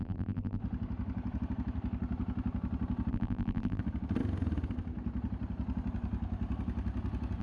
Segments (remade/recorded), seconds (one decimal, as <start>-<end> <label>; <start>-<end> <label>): 0.0-0.6 remade; 0.6-3.1 recorded; 3.1-3.8 remade; 3.8-7.4 recorded